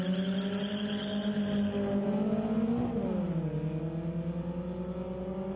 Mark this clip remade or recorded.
recorded